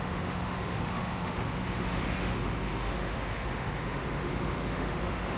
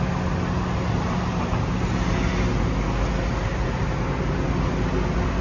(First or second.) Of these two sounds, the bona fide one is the second